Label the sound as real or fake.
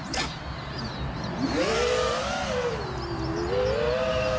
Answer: real